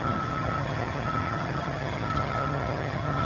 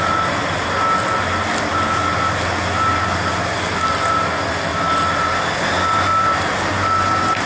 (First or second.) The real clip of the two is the second